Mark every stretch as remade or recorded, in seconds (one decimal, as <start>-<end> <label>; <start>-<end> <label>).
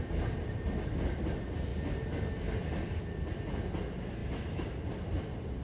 0.0-5.6 recorded